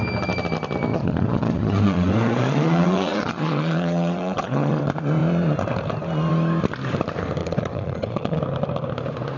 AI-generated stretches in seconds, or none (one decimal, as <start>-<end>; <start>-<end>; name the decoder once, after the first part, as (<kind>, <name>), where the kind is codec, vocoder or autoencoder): 0.9-4.8 (vocoder, Vocos); 7.4-8.4